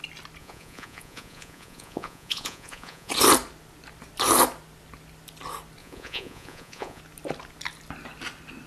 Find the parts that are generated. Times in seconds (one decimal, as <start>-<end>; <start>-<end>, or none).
0.4-3.1; 5.8-7.0